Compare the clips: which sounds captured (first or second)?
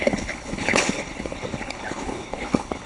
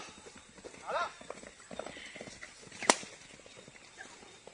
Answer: second